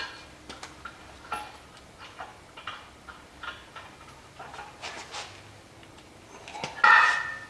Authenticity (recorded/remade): recorded